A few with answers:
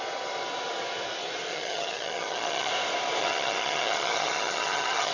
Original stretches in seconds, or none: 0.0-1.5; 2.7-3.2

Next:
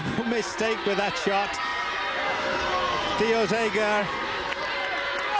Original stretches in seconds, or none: 0.0-5.4